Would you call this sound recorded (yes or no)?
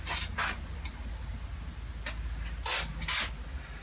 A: yes